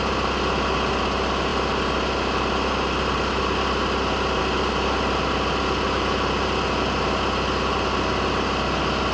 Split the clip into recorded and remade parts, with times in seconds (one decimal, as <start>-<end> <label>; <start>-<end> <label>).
0.0-9.1 recorded